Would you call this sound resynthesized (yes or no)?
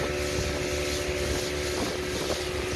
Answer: no